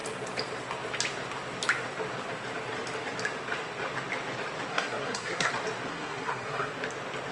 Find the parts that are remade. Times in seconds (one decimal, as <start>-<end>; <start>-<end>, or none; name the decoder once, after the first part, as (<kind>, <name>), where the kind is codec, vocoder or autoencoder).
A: 4.7-5.5 (codec, SNAC); 5.9-6.7